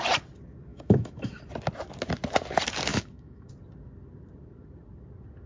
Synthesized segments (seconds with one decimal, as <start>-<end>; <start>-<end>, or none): 0.7-1.4; 2.9-3.5